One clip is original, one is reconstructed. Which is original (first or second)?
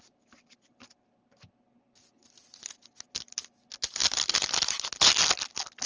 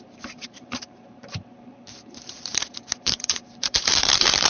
first